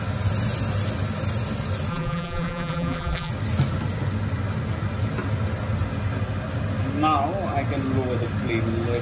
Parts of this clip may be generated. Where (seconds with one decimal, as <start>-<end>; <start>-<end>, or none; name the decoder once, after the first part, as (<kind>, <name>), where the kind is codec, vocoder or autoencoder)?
1.9-3.3 (vocoder, BigVGAN v2)

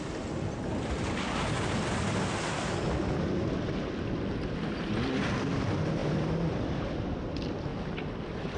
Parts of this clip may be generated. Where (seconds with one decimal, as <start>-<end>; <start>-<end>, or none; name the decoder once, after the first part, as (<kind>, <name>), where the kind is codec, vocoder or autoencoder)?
6.0-7.0 (vocoder, BigVGAN v2); 7.7-8.6